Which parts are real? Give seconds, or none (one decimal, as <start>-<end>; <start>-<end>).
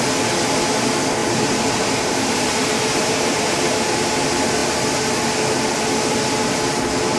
0.0-1.2; 3.4-7.2